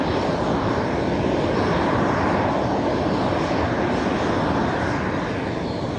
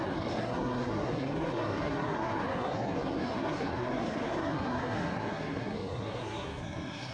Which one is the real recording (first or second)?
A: first